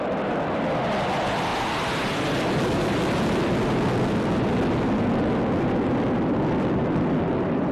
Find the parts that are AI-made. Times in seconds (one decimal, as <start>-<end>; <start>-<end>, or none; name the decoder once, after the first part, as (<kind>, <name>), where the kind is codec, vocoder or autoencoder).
none